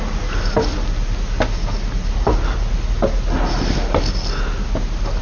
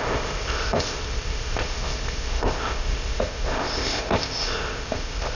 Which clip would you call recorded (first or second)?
first